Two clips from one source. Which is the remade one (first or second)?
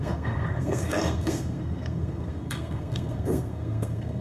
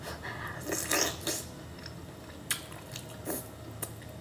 first